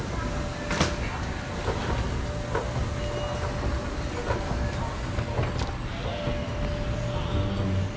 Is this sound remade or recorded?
recorded